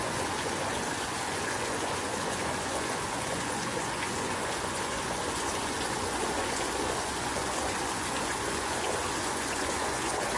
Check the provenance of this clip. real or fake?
fake